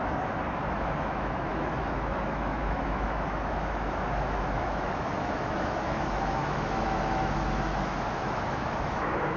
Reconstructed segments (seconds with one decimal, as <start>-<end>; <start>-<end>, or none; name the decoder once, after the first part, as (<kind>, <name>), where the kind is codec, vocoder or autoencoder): 0.0-9.4 (autoencoder, DAC-VAE)